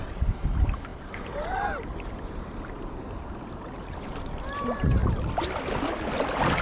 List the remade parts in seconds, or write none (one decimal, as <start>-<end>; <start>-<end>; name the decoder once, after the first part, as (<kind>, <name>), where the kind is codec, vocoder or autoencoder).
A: 0.0-5.0 (vocoder, BigVGAN v2)